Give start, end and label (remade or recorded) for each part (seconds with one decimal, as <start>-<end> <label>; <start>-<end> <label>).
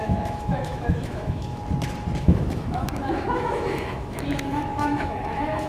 0.0-1.6 remade; 1.6-2.2 recorded; 2.2-5.7 remade